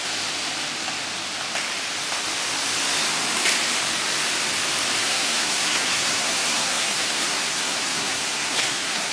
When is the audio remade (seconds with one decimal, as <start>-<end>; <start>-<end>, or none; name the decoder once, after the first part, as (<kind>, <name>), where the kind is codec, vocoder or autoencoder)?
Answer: 5.0-9.1 (codec, SNAC)